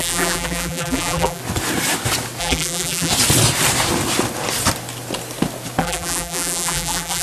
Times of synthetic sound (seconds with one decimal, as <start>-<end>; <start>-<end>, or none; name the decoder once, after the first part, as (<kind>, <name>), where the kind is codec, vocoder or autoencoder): 0.0-1.4 (vocoder, BigVGAN v2); 2.4-3.1; 5.8-7.2